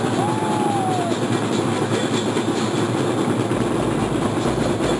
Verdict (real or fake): real